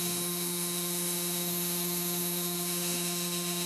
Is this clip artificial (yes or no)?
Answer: yes